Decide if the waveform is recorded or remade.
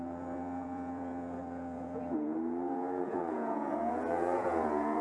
remade